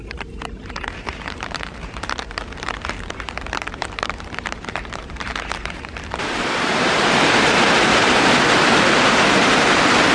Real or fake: fake